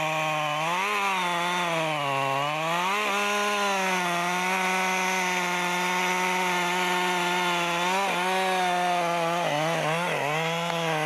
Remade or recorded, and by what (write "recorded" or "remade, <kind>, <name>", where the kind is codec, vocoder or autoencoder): recorded